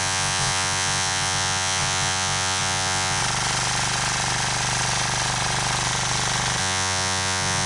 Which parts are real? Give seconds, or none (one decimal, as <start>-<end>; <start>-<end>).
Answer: 3.2-6.6